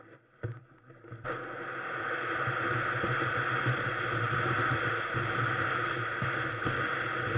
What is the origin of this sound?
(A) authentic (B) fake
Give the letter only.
A